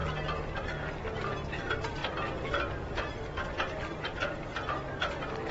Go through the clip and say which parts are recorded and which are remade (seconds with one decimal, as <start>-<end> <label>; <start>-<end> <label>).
0.0-5.5 recorded